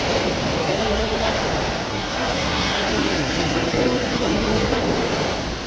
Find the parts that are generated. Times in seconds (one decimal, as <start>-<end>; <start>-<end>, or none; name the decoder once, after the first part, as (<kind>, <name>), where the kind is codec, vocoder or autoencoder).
0.6-1.3 (codec, SNAC); 1.9-4.8

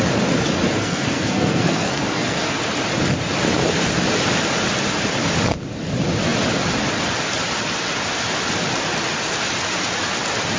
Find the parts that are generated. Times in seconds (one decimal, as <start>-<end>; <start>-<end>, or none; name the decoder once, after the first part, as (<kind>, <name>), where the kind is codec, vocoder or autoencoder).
0.8-2.5 (codec, SNAC)